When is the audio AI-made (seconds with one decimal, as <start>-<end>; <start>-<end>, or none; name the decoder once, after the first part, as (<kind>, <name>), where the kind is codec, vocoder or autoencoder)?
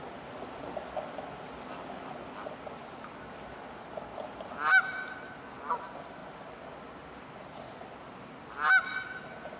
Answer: none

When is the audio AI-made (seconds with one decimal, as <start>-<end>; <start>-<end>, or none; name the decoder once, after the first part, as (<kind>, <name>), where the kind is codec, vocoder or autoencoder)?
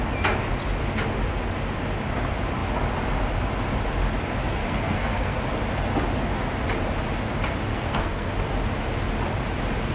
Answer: 4.6-5.4 (codec, SNAC); 7.7-8.3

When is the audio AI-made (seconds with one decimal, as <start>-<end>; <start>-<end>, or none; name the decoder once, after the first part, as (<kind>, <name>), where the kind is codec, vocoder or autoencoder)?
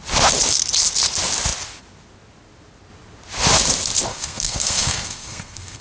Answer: 4.1-5.8 (codec, SNAC)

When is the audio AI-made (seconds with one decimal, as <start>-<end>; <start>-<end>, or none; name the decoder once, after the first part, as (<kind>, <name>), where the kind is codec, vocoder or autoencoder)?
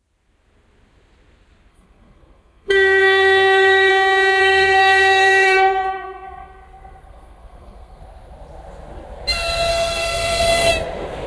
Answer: 1.7-3.9 (codec, SNAC); 4.4-8.0; 9.7-10.7